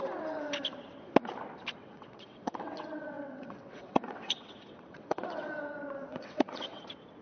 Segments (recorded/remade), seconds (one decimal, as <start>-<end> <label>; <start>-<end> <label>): 0.0-1.8 recorded; 1.8-5.5 remade; 5.5-6.1 recorded; 6.1-6.8 remade; 6.8-7.2 recorded